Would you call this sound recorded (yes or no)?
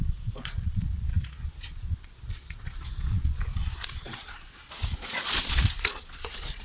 no